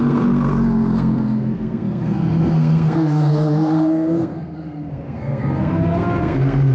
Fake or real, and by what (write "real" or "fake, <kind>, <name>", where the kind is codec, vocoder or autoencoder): fake, codec, SNAC